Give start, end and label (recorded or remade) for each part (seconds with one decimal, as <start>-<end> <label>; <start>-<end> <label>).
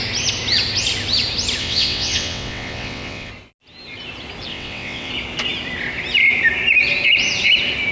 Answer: 0.0-1.6 recorded; 1.6-3.3 remade; 3.3-4.5 recorded; 4.5-5.1 remade; 5.1-7.9 recorded